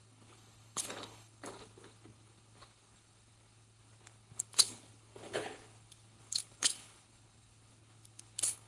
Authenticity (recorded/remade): remade